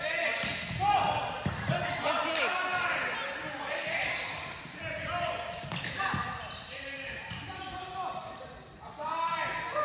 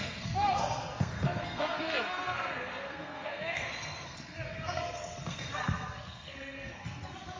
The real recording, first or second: first